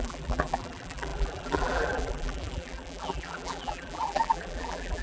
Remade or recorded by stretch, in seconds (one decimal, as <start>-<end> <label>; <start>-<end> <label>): 0.0-5.0 remade